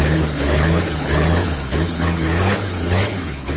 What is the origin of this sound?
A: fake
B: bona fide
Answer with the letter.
A